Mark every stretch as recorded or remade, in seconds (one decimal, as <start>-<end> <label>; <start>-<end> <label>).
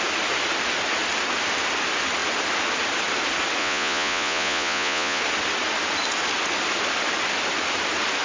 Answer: 0.0-3.6 recorded; 3.6-5.2 remade; 5.2-8.2 recorded